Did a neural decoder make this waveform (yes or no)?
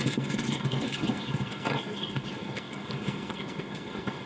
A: yes